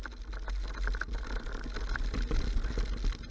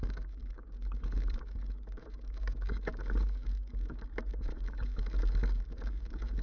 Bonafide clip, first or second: first